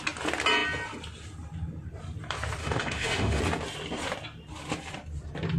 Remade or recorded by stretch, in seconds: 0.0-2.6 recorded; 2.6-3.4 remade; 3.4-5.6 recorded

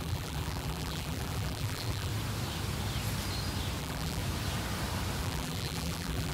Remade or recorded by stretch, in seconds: 0.0-2.1 remade; 2.1-3.8 recorded; 3.8-4.2 remade; 4.2-5.2 recorded; 5.2-6.3 remade

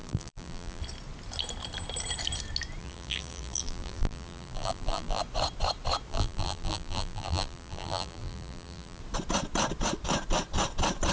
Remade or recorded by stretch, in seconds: 0.0-0.8 remade; 0.8-2.8 recorded; 2.8-5.2 remade; 5.2-6.1 recorded; 6.1-9.0 remade; 9.0-11.1 recorded

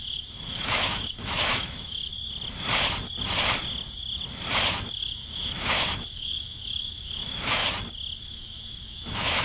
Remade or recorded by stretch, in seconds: 0.0-2.1 remade; 2.1-4.9 recorded; 4.9-7.6 remade; 7.6-8.2 recorded; 8.2-9.4 remade

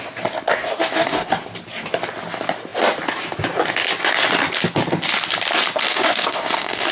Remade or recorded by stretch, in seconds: 0.0-0.5 recorded; 0.5-1.3 remade; 1.3-5.9 recorded; 5.9-6.9 remade

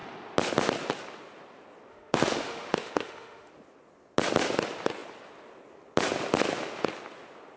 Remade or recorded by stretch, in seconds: 0.0-1.9 recorded; 1.9-3.5 remade; 3.5-7.6 recorded